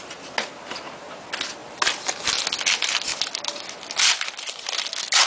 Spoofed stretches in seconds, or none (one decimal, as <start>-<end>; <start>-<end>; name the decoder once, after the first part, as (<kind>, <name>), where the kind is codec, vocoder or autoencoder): none